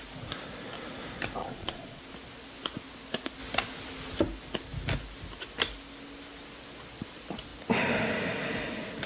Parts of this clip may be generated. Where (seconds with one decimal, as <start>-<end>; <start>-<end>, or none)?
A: 1.4-2.0